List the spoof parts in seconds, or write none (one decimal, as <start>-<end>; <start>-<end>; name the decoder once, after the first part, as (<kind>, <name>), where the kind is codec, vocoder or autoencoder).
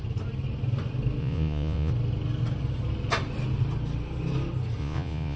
1.2-1.9 (vocoder, Vocos); 4.8-5.4